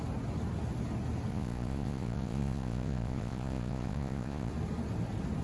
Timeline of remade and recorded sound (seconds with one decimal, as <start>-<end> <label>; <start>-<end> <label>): 0.0-1.3 recorded; 1.3-4.5 remade; 4.5-5.4 recorded